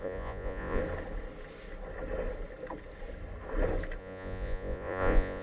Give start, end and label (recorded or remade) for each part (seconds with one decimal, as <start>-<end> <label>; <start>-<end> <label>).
0.0-0.8 remade; 0.8-4.0 recorded; 4.0-5.4 remade